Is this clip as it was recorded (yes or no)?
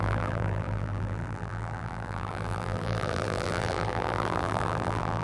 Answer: no